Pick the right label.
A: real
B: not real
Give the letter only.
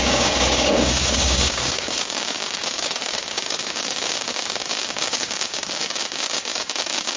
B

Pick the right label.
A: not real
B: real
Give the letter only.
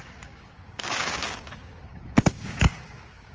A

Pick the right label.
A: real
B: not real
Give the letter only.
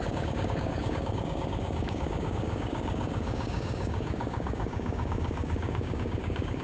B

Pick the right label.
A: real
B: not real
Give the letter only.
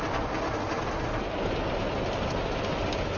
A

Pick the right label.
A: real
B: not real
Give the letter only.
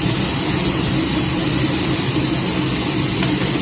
A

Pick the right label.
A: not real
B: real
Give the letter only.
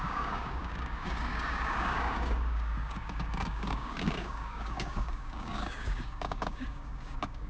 A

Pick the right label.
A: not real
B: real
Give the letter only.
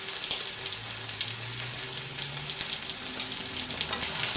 B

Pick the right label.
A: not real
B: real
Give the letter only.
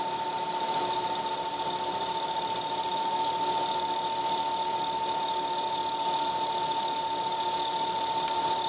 B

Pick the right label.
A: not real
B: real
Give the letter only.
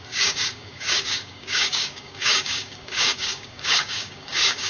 A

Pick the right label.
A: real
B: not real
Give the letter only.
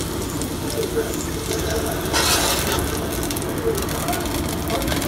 A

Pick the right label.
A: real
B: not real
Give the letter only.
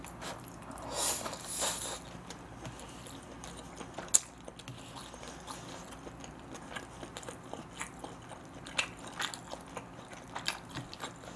A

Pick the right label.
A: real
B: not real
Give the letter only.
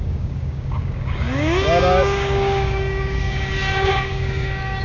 B